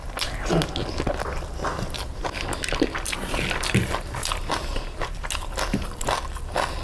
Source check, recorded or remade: recorded